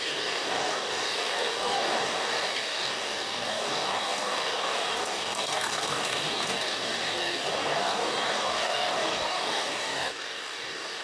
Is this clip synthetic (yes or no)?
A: yes